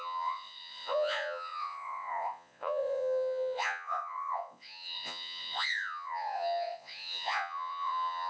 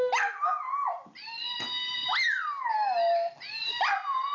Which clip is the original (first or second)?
second